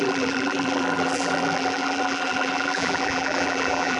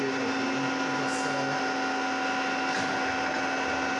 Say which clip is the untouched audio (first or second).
second